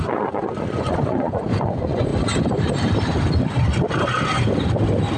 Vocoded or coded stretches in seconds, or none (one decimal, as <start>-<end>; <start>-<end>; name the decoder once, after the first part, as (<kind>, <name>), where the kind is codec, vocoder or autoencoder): 0.0-2.1 (vocoder, Vocos)